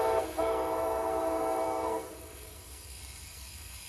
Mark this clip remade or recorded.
remade